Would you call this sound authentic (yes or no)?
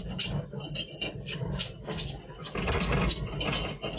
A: yes